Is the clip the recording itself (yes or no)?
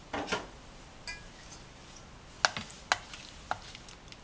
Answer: yes